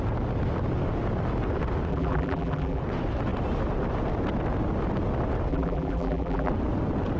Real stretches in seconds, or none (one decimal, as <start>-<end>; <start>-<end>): 0.0-1.9; 2.8-5.5; 6.5-7.2